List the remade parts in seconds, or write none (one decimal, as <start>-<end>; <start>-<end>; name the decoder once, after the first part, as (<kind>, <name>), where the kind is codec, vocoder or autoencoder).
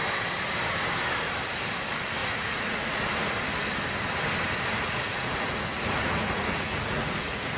2.2-3.0 (vocoder, Vocos); 4.7-7.6